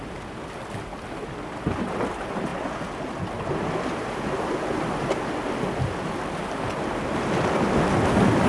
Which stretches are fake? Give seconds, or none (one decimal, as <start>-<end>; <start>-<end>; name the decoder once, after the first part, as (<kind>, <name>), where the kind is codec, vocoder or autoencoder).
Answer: none